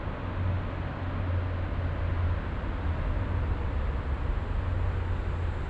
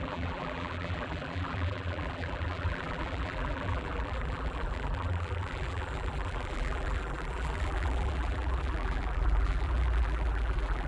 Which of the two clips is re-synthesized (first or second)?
second